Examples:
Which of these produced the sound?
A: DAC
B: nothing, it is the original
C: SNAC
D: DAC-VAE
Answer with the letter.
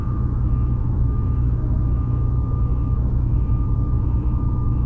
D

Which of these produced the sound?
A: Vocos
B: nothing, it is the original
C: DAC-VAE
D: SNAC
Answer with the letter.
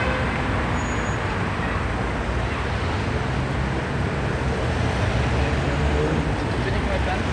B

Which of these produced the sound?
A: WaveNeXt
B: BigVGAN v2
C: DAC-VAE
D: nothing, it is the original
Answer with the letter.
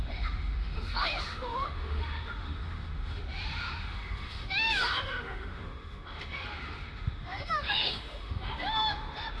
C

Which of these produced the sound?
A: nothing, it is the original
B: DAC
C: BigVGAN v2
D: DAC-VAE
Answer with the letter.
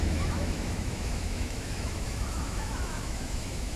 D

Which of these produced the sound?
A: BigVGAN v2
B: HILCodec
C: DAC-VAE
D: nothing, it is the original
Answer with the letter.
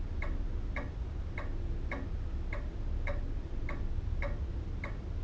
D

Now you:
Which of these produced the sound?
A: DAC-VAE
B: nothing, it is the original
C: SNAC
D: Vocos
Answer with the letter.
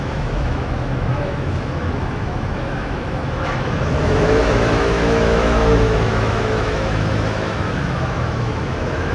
A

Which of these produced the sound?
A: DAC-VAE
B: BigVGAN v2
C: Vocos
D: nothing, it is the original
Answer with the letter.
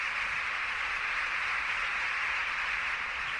D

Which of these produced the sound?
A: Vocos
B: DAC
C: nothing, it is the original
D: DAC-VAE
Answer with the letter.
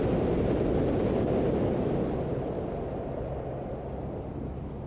C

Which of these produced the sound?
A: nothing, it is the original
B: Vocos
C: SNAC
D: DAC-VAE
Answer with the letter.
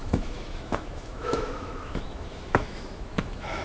D